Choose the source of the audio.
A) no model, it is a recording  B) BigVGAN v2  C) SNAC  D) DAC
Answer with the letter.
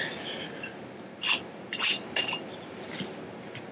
A